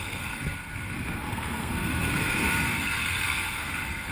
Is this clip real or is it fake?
fake